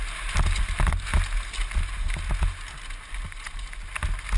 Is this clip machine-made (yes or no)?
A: no